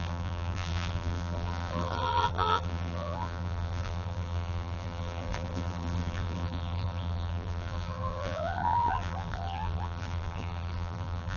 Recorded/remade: remade